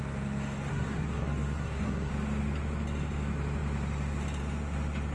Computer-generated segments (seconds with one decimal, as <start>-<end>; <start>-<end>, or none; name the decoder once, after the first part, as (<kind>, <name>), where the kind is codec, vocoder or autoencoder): 0.7-2.1 (codec, SNAC)